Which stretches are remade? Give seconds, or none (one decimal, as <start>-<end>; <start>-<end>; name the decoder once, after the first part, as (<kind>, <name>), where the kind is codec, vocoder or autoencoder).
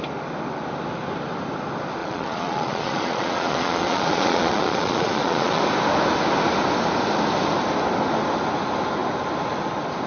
2.0-5.6 (vocoder, Vocos)